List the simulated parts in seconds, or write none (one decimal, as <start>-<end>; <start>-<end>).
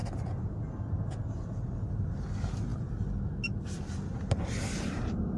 none